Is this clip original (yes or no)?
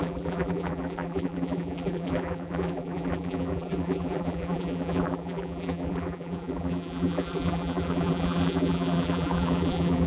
no